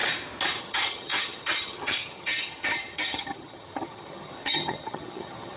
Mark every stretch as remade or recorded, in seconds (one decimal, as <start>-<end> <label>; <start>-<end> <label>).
0.0-0.6 recorded; 0.6-5.6 remade